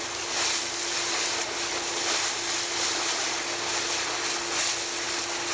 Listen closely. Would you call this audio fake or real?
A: real